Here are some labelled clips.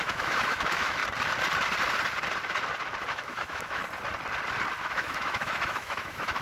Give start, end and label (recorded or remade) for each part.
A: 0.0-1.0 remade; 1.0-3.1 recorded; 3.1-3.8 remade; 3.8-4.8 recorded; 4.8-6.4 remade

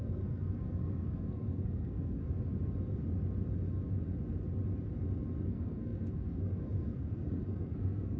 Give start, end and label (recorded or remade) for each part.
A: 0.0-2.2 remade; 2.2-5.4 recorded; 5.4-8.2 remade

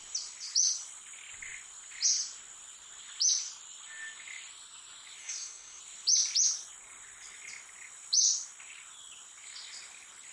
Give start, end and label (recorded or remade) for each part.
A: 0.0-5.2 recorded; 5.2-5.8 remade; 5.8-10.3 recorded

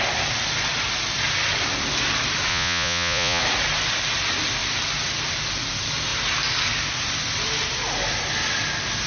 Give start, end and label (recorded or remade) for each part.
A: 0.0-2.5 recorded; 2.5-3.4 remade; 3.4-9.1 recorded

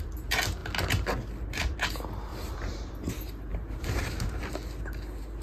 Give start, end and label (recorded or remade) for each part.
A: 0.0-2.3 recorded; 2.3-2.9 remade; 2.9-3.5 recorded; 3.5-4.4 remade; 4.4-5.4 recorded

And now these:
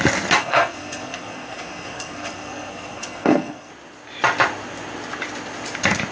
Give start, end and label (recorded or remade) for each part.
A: 0.0-0.4 recorded; 0.4-3.7 remade; 3.7-6.1 recorded

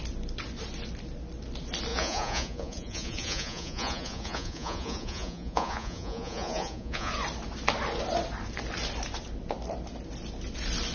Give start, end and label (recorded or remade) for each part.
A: 0.0-1.9 recorded; 1.9-7.1 remade; 7.1-10.9 recorded